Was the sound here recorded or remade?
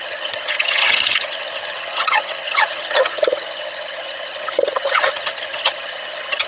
remade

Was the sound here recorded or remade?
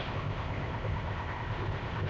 remade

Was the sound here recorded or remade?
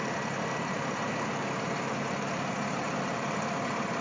remade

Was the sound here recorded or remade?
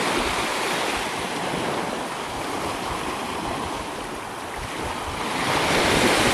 recorded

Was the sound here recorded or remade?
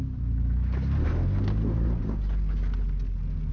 recorded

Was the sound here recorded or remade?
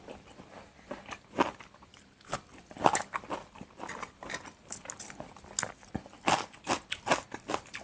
recorded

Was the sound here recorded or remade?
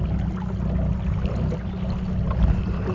recorded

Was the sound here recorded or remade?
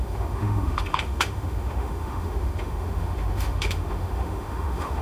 remade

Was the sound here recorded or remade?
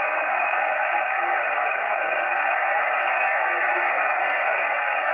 remade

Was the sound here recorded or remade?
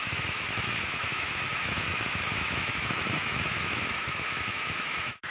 remade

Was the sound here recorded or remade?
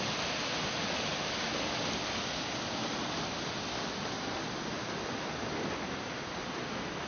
recorded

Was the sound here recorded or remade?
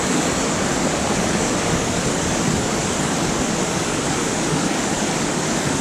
remade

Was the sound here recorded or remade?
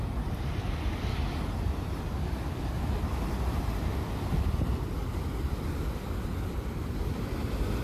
recorded